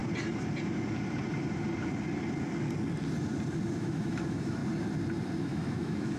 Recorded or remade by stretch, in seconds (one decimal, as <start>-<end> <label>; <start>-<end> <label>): 0.0-3.7 recorded; 3.7-4.6 remade; 4.6-5.4 recorded; 5.4-6.2 remade